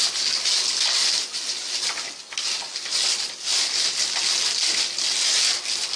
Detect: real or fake real